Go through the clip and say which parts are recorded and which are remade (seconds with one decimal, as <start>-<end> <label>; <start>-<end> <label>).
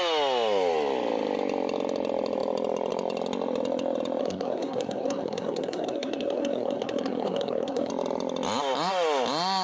0.0-4.2 recorded; 4.2-7.9 remade; 7.9-9.6 recorded